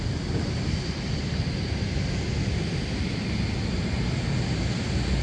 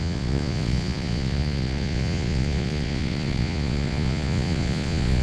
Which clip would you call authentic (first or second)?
first